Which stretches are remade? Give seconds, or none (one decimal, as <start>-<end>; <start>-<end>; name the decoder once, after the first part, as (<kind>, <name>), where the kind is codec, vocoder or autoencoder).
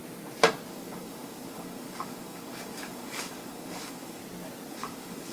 0.7-4.2 (codec, DAC); 4.7-5.3